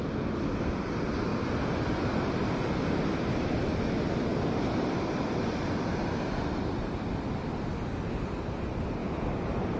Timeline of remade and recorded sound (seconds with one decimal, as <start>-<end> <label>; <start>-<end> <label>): 0.0-1.3 recorded; 1.3-2.7 remade; 2.7-9.0 recorded; 9.0-9.8 remade